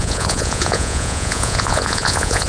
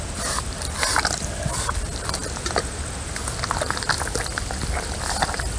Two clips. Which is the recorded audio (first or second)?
second